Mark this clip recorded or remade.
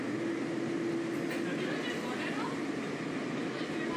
recorded